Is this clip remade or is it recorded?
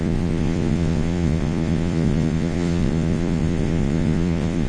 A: remade